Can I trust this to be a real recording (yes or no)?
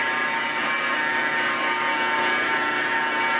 yes